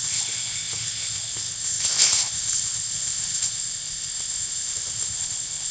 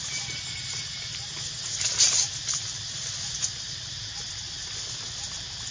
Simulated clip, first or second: first